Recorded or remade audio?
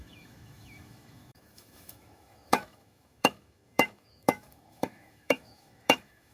remade